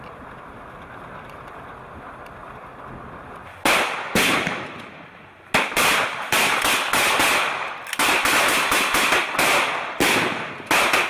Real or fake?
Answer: real